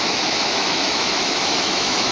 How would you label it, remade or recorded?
remade